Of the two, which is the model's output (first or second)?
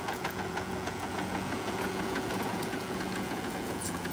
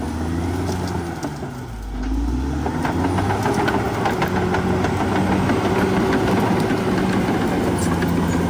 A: first